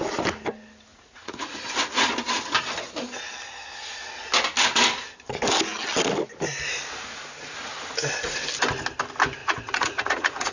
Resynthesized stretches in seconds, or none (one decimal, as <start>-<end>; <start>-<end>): 0.9-1.7; 9.4-10.5